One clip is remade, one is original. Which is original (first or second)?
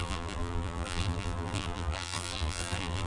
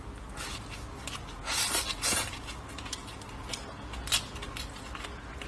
second